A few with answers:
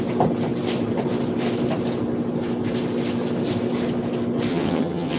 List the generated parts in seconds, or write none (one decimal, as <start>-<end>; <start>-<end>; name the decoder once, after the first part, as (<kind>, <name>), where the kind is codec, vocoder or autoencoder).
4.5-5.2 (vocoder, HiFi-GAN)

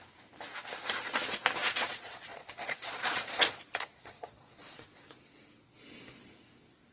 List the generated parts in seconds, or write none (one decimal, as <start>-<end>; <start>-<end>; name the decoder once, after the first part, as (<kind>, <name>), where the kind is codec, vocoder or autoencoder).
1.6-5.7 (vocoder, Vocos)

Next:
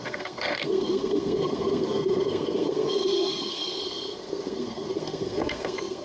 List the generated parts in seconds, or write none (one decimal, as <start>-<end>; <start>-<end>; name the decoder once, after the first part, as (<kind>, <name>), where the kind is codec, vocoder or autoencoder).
0.0-6.0 (codec, SNAC)

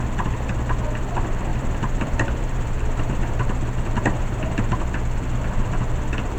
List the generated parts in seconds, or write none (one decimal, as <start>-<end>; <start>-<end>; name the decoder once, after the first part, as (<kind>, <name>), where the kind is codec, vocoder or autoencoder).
1.5-3.4 (vocoder, BigVGAN v2); 4.0-4.7

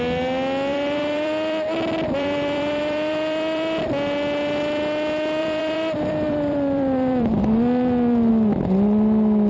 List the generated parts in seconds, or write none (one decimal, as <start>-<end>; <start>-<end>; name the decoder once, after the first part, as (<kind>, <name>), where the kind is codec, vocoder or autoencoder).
0.7-3.8 (vocoder, BigVGAN v2); 5.4-8.3

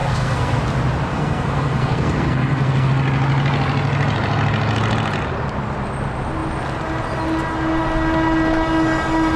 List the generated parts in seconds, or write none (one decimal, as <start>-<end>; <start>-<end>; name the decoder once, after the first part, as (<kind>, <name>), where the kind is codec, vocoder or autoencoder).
0.0-0.6 (codec, SNAC); 1.1-2.9

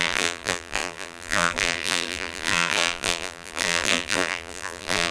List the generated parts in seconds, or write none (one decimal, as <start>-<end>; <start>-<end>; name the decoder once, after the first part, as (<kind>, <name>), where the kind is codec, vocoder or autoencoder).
0.0-5.1 (vocoder, BigVGAN v2)